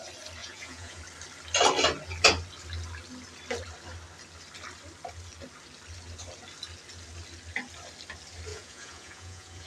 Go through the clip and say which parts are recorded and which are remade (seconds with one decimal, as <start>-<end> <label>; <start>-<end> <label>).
0.0-0.4 recorded; 0.4-1.0 remade; 1.0-8.5 recorded; 8.5-9.7 remade